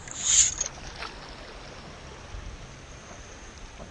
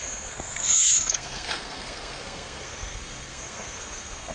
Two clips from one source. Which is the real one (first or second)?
first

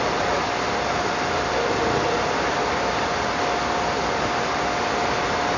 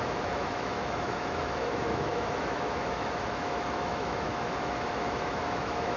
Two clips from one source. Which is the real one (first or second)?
first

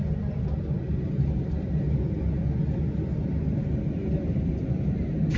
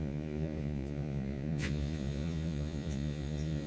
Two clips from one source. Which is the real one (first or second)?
first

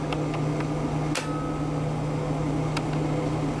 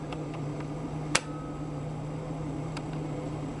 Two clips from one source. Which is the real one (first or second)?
first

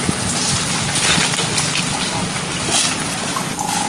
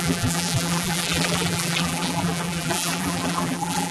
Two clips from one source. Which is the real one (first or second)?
first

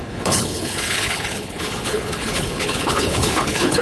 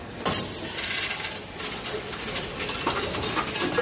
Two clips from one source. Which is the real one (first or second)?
second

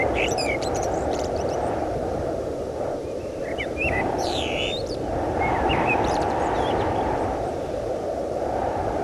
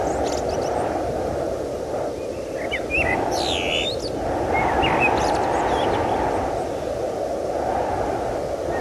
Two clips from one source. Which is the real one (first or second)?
second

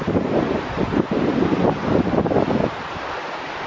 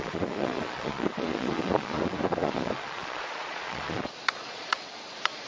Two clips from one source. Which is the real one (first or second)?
first